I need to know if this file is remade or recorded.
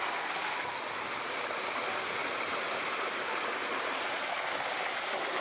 recorded